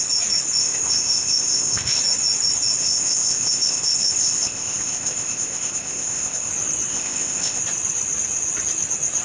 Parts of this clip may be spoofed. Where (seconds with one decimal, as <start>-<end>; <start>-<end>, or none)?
0.6-2.0; 2.8-6.5; 6.9-7.6